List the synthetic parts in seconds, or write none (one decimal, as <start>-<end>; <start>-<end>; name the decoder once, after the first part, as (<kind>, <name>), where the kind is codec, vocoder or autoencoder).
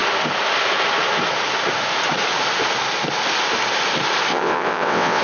4.3-5.2 (vocoder, WaveNeXt)